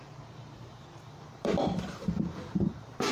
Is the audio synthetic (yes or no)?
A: yes